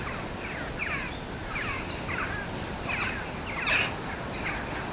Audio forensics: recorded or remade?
recorded